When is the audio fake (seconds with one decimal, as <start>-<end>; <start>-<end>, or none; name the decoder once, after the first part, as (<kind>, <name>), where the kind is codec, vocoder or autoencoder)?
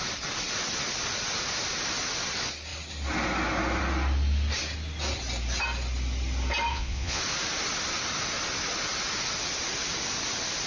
6.7-7.2 (vocoder, Vocos)